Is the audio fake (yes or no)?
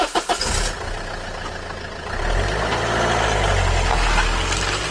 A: no